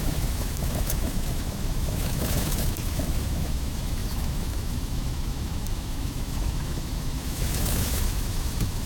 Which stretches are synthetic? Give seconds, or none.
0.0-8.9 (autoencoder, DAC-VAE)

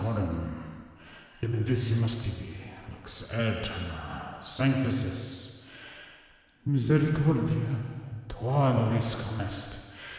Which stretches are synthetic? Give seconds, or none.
1.3-2.0 (codec, SNAC)

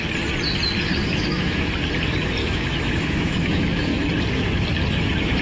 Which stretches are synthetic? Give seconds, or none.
1.0-1.7 (autoencoder, DAC-VAE); 2.4-3.9